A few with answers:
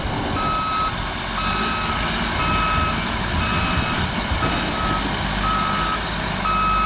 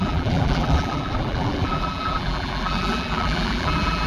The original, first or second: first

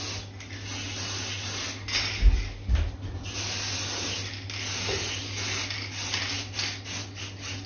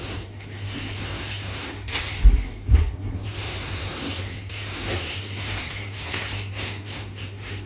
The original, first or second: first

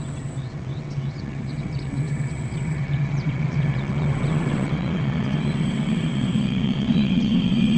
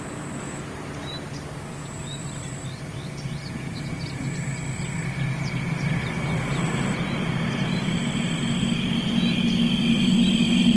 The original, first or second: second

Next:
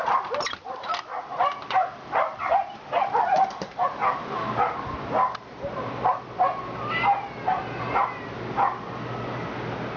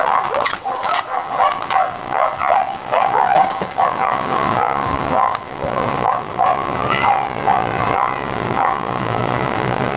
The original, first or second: first